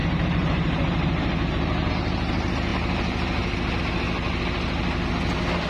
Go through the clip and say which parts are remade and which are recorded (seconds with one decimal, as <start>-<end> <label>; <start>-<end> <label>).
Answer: 0.0-1.9 remade; 1.9-5.7 recorded